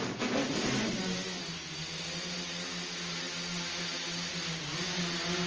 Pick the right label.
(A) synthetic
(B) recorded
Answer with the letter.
B